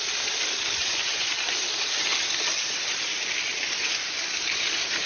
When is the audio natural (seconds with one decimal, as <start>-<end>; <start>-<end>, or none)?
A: 0.0-0.8; 1.3-5.1